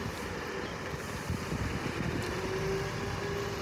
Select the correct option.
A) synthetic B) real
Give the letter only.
B